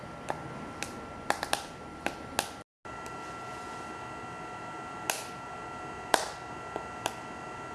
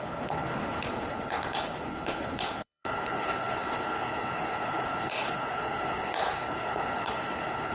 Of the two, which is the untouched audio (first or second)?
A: first